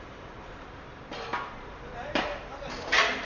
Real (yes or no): no